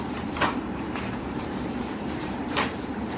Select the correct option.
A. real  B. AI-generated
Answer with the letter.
B